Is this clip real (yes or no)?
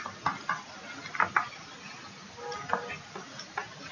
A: yes